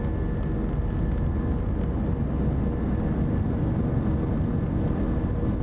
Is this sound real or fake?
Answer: real